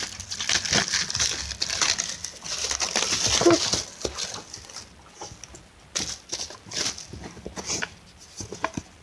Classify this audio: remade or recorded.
recorded